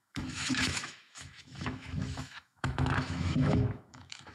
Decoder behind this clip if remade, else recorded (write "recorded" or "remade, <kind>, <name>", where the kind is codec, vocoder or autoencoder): remade, autoencoder, DAC-VAE